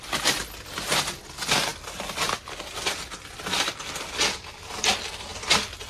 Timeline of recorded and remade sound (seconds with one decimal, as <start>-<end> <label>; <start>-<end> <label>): 0.0-5.9 recorded